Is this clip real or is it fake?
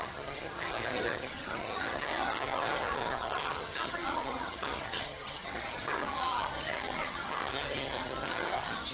fake